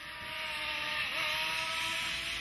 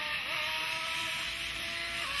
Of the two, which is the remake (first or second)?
second